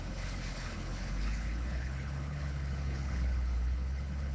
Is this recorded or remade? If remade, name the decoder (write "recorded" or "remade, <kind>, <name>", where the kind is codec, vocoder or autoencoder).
remade, codec, HILCodec